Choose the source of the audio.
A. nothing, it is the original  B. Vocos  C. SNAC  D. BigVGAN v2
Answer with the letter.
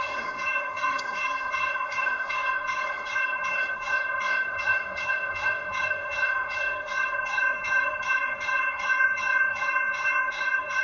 C